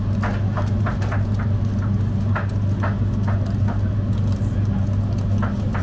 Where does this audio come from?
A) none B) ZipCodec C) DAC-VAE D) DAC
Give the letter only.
A